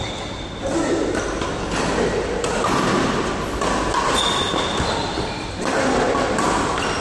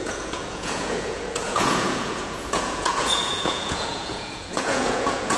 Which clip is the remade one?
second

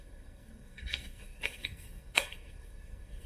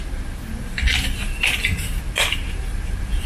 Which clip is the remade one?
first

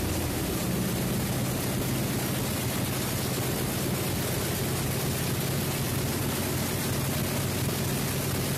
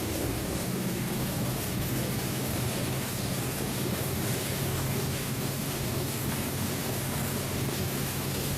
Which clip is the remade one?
second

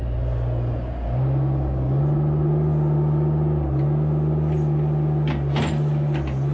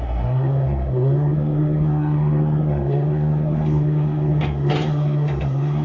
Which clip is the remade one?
second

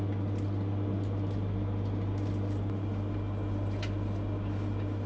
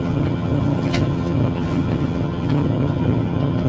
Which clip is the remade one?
second